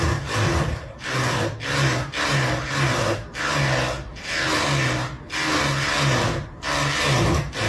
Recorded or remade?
recorded